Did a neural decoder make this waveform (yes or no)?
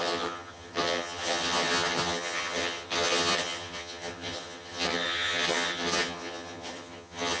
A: yes